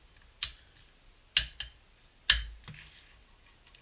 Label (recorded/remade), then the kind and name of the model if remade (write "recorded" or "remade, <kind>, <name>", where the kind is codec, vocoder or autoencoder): recorded